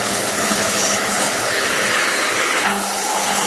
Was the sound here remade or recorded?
remade